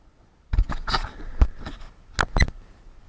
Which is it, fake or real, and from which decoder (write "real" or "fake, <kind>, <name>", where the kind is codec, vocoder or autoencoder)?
real